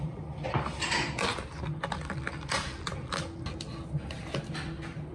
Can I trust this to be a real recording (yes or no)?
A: yes